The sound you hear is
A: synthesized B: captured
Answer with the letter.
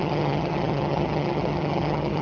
A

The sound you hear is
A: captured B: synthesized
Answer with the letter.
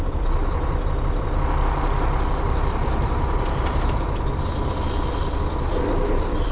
B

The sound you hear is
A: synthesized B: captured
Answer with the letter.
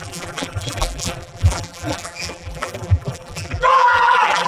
A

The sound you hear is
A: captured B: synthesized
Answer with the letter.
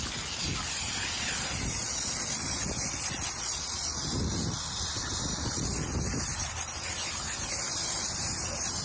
A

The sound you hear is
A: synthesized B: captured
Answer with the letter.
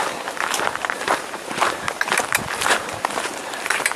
A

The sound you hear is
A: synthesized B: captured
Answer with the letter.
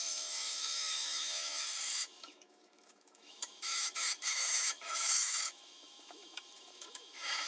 A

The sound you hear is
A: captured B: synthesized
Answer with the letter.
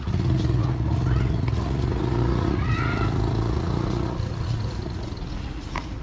B